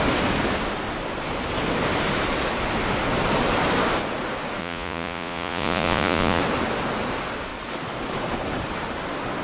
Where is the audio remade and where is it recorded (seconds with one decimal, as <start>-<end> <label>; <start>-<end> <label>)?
0.0-4.6 recorded; 4.6-6.4 remade; 6.4-9.4 recorded